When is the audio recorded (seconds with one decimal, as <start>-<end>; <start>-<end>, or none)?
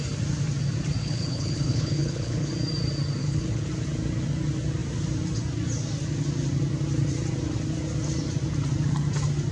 0.0-1.0; 2.5-3.2; 3.7-9.5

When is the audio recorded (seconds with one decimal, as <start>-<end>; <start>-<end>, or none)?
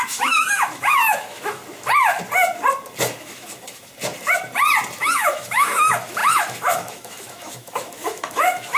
1.6-3.2; 3.9-5.0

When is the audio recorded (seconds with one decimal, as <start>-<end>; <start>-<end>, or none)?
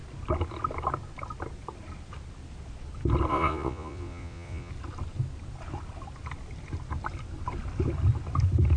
0.0-3.3; 4.7-8.8